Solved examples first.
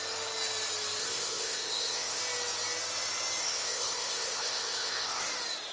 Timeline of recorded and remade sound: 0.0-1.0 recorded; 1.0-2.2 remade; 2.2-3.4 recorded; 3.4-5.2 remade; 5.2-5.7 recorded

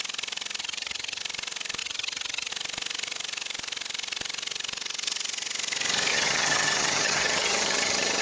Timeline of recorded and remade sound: 0.0-0.6 recorded; 0.6-1.2 remade; 1.2-1.8 recorded; 1.8-2.5 remade; 2.5-6.1 recorded; 6.1-8.2 remade

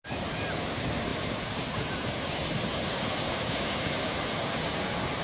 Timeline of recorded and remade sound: 0.0-5.2 recorded

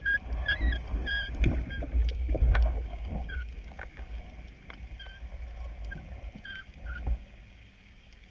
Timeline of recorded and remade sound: 0.0-2.0 recorded; 2.0-4.2 remade; 4.2-6.6 recorded; 6.6-8.3 remade

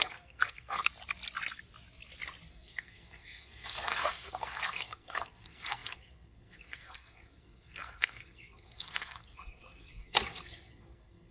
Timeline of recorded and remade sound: 0.0-0.9 remade; 0.9-2.5 recorded; 2.5-11.3 remade